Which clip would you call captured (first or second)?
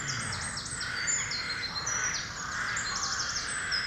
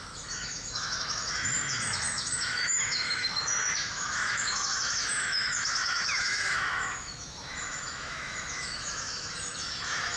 first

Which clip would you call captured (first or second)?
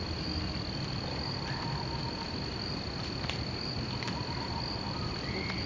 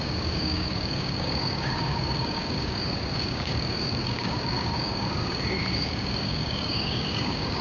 first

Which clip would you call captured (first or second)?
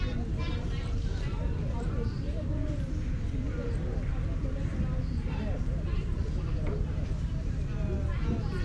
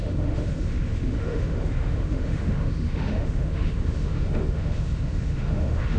first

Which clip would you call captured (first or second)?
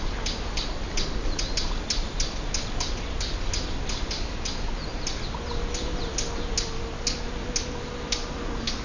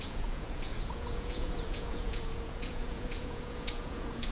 first